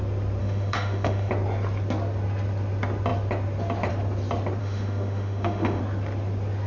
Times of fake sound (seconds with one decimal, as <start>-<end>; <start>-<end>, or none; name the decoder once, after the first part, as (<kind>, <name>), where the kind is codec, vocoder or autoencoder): 0.4-1.3 (autoencoder, DAC-VAE); 4.6-5.8